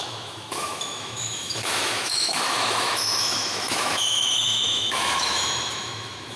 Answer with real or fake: fake